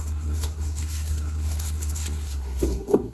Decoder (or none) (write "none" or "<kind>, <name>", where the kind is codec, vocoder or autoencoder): codec, SNAC